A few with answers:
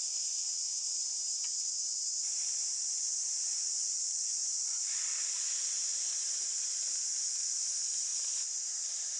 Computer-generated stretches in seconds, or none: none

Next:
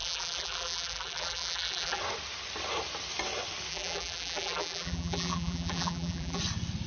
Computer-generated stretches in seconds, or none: 0.0-2.0 (vocoder, BigVGAN v2); 3.7-6.4

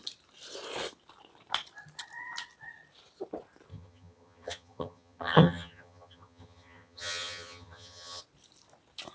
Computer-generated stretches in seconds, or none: 3.7-8.2 (vocoder, HiFi-GAN)

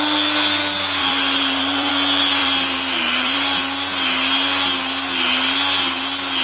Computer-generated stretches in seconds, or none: 1.0-1.9 (vocoder, BigVGAN v2); 2.4-3.6

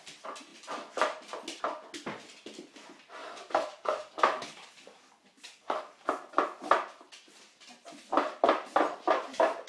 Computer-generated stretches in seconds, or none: 3.2-5.8 (codec, DAC)